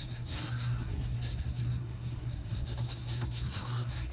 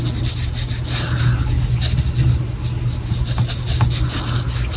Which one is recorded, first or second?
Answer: second